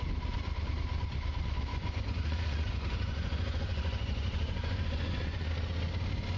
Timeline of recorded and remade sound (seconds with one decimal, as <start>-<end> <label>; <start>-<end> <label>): 0.0-1.7 recorded; 1.7-5.5 remade; 5.5-6.4 recorded